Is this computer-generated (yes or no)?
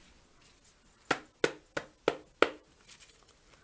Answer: no